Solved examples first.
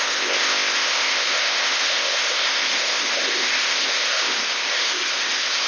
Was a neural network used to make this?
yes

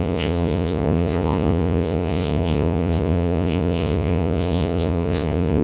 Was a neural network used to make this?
yes